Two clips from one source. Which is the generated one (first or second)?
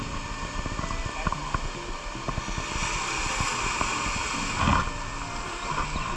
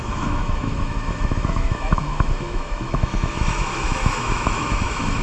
second